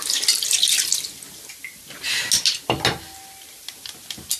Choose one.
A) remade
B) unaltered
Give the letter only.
B